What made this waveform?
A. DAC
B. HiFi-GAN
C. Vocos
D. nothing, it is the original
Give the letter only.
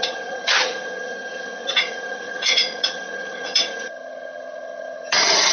B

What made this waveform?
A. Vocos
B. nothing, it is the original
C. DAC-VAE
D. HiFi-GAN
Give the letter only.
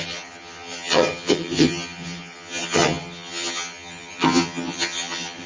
D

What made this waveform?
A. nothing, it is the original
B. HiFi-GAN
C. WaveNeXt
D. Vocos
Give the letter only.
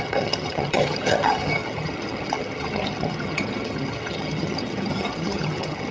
B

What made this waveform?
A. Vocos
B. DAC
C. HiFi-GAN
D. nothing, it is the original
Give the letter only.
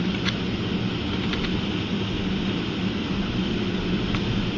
D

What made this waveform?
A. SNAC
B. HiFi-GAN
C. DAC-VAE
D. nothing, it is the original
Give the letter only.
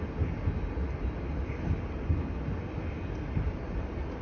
D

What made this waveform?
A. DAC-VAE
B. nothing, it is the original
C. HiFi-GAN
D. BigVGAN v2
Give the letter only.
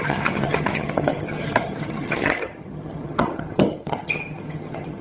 C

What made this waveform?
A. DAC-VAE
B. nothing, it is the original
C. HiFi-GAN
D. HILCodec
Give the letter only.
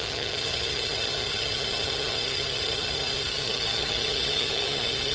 C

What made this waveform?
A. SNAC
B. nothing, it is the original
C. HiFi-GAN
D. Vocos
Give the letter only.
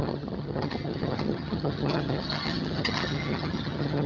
C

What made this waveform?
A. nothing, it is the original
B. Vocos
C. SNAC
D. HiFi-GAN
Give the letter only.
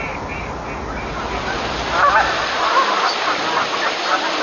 A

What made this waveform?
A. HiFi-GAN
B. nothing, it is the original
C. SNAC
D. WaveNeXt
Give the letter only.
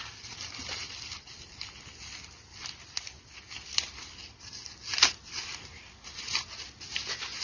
B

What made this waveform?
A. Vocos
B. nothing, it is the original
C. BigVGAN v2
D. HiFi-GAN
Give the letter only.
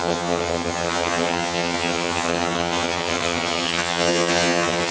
D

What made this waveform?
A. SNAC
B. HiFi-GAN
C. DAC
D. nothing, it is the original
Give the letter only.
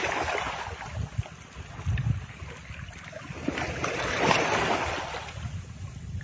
D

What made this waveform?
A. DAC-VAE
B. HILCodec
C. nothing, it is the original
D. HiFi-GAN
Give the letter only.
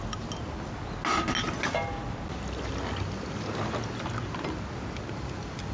C